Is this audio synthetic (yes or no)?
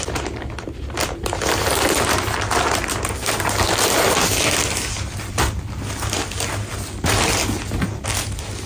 no